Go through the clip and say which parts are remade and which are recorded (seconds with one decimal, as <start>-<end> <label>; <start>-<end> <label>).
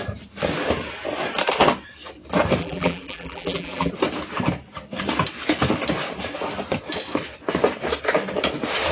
0.0-2.6 recorded; 2.6-3.9 remade; 3.9-8.9 recorded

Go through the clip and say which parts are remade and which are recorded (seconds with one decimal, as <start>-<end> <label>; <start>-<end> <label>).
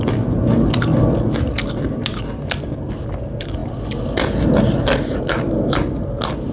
0.0-6.5 recorded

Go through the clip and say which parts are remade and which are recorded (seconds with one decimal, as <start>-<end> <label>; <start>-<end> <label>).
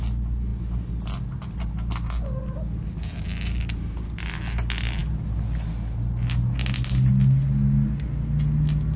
0.0-9.0 recorded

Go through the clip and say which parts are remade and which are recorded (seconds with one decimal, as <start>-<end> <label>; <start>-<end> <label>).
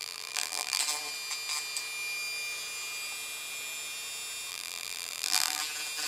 0.0-0.8 remade; 0.8-4.5 recorded; 4.5-5.6 remade; 5.6-6.1 recorded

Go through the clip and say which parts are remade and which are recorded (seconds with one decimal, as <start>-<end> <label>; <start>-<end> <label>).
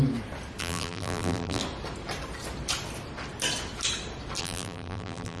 0.0-0.6 recorded; 0.6-1.6 remade; 1.6-4.4 recorded; 4.4-5.4 remade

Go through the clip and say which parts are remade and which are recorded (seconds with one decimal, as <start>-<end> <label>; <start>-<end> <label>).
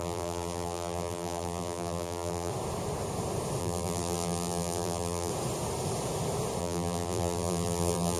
0.0-2.5 remade; 2.5-3.6 recorded; 3.6-5.3 remade; 5.3-6.6 recorded; 6.6-8.2 remade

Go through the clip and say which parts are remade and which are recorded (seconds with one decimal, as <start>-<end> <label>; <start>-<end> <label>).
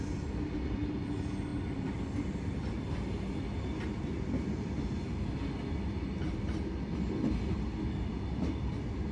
0.0-9.1 recorded